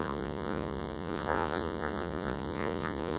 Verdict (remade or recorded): remade